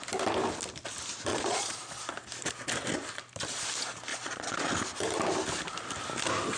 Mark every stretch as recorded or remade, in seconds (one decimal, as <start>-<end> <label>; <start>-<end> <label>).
0.0-1.3 recorded; 1.3-2.0 remade; 2.0-4.1 recorded; 4.1-4.7 remade; 4.7-6.6 recorded